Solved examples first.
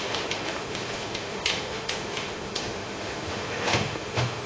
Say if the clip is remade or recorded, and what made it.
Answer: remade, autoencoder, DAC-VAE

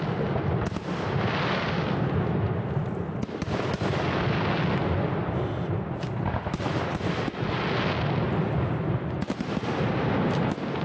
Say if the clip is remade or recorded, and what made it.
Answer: recorded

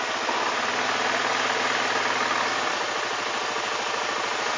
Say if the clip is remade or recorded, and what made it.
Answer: recorded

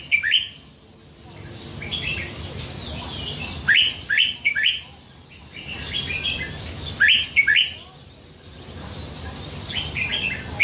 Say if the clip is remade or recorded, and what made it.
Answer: recorded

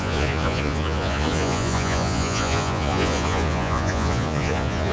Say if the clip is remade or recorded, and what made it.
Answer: remade, vocoder, Vocos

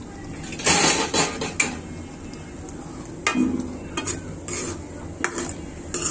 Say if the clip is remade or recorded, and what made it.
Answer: recorded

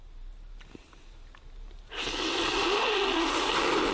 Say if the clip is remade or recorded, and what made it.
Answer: recorded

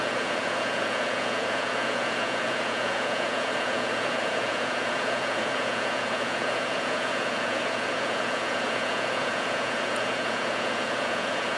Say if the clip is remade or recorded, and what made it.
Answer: remade, vocoder, Vocos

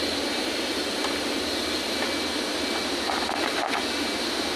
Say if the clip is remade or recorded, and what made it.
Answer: recorded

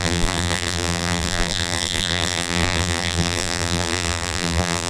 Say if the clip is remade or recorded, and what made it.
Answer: remade, vocoder, BigVGAN v2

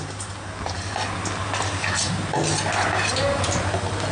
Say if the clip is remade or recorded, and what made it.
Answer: recorded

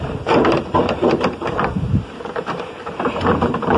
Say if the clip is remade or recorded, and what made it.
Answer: remade, vocoder, BigVGAN v2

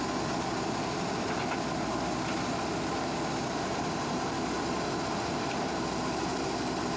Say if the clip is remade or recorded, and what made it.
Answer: recorded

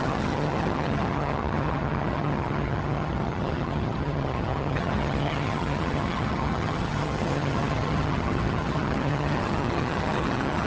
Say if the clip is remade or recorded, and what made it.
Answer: remade, vocoder, HiFi-GAN